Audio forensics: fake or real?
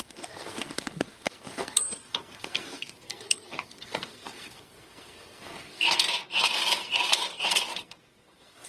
fake